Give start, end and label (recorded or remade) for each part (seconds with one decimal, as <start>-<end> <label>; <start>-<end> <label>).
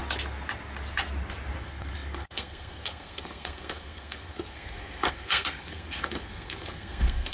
0.0-1.6 recorded; 1.6-7.3 remade